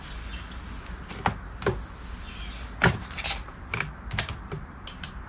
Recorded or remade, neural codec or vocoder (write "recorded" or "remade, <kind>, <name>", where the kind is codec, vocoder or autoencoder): recorded